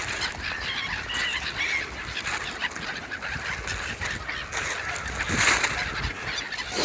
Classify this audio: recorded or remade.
recorded